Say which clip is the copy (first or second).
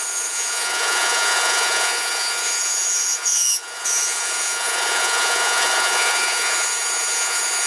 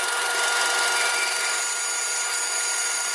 first